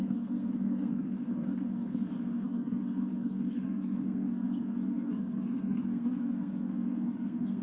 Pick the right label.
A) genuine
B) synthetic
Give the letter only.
B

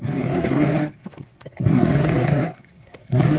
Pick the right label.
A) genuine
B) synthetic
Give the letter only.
B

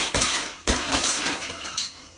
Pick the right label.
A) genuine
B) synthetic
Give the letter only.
B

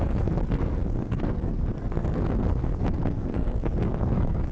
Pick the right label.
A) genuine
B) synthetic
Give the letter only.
B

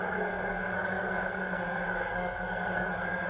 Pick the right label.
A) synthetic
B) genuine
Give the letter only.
A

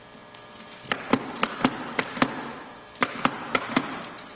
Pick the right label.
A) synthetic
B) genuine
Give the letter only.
B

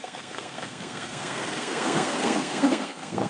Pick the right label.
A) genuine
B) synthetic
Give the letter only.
B